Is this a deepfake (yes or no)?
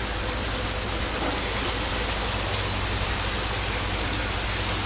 no